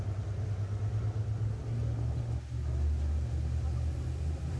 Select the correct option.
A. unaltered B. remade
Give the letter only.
A